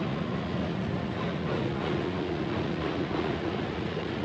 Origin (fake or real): fake